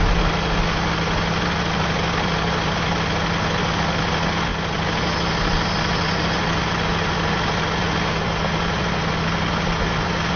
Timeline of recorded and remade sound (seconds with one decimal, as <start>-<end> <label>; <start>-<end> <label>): 0.0-10.4 recorded